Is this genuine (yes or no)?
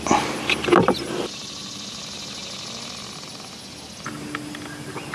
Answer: yes